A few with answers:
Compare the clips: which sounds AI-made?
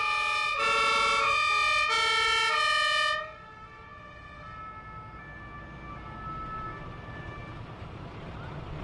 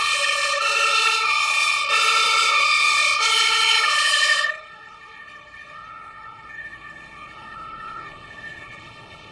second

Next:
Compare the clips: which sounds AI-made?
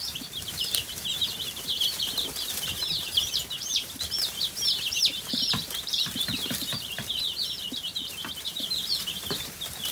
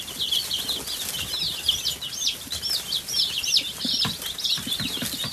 first